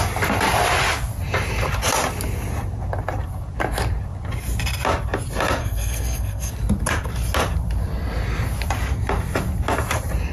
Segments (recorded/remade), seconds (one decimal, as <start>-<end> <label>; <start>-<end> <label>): 0.0-5.6 recorded; 5.6-6.5 remade; 6.5-10.3 recorded